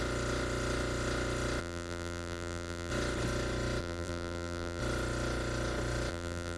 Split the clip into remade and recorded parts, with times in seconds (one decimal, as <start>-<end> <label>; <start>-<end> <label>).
0.0-1.6 recorded; 1.6-2.9 remade; 2.9-3.8 recorded; 3.8-4.8 remade; 4.8-6.1 recorded; 6.1-6.6 remade